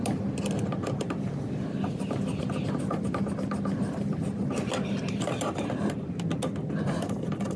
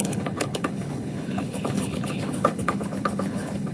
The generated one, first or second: second